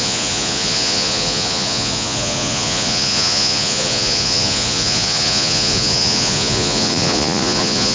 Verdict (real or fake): fake